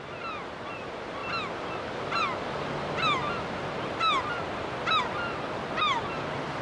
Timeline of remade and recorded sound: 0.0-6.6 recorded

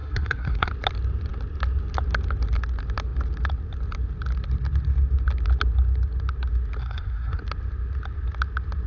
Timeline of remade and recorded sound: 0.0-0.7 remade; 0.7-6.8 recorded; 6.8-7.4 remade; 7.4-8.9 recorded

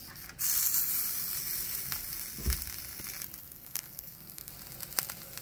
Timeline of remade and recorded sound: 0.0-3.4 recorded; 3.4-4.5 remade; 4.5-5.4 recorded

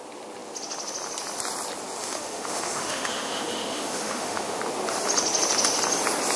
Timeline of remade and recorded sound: 0.0-2.0 recorded; 2.0-4.6 remade; 4.6-6.4 recorded